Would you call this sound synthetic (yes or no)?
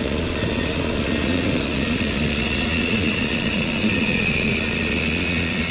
yes